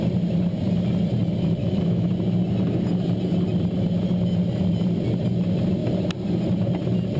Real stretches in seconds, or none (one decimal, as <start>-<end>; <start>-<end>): 0.0-1.6; 2.1-7.2